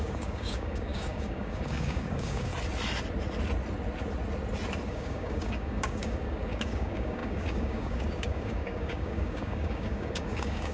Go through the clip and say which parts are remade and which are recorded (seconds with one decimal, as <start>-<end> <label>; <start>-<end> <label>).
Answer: 0.0-2.5 remade; 2.5-4.9 recorded; 4.9-10.7 remade